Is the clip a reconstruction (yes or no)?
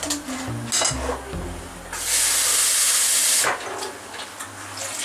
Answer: no